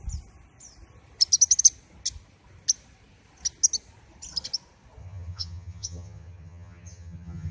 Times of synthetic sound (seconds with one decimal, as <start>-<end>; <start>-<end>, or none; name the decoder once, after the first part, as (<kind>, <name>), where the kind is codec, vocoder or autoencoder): 5.0-7.5 (vocoder, HiFi-GAN)